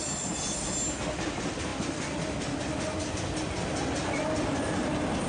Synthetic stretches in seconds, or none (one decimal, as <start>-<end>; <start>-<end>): none

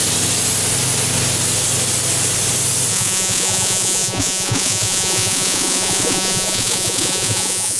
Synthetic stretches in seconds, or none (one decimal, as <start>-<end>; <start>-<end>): 2.9-7.8

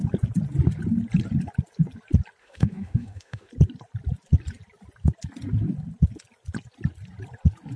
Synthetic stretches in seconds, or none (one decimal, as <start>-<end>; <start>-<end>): 2.4-3.5

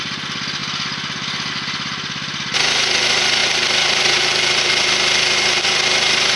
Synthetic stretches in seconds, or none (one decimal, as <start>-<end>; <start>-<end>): none

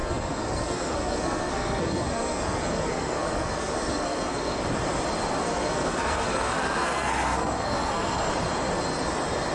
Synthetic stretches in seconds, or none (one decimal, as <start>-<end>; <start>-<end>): 0.0-4.6; 5.4-8.3

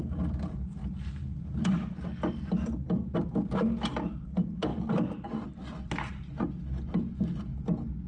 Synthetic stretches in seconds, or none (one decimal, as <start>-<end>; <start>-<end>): none

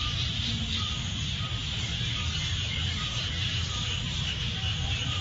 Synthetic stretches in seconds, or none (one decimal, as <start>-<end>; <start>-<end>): 3.4-4.3

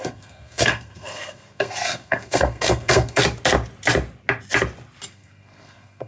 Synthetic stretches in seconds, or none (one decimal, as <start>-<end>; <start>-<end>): 0.0-3.2; 5.1-6.1